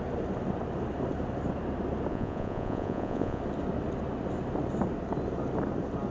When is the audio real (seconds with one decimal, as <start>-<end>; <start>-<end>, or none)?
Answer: 0.0-2.1; 3.4-6.1